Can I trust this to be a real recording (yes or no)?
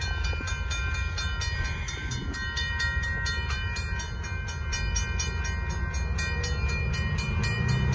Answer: yes